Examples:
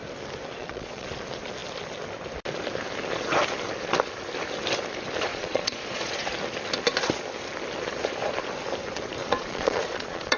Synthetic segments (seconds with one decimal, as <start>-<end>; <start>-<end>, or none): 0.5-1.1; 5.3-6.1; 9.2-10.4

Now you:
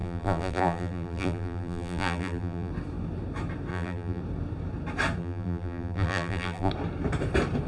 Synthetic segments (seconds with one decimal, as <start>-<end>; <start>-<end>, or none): 0.0-2.7; 3.7-4.2; 5.2-6.7

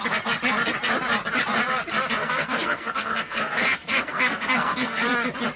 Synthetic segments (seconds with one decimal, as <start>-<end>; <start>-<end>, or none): 2.2-5.0